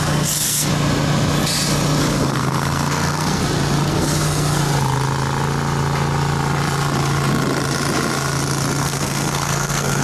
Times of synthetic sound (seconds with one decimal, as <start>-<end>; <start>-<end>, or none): 0.0-0.7; 2.0-3.4; 3.9-4.7; 8.8-10.0

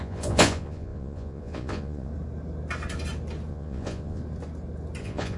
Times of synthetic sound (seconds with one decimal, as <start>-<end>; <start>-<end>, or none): 0.0-2.1; 3.5-4.2; 5.0-5.4

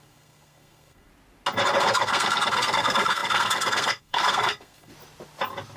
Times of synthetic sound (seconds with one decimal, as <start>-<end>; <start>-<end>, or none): 0.0-1.1; 1.8-4.9

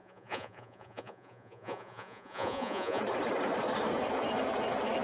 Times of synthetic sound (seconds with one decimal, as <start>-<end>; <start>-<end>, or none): 0.0-3.0

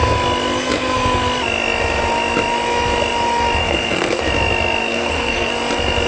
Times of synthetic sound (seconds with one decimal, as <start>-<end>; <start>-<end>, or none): 3.6-4.2; 4.8-5.5

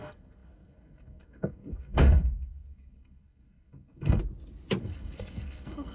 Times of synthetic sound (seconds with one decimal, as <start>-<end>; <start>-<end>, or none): 0.0-4.2; 4.8-5.9

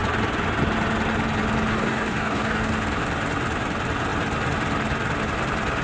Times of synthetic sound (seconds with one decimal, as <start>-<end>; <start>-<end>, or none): 1.7-2.7

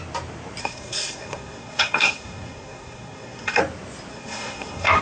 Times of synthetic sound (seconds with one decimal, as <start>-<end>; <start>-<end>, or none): 0.6-3.6; 4.1-5.0